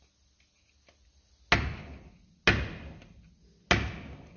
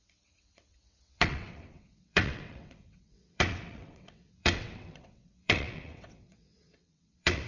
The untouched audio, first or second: first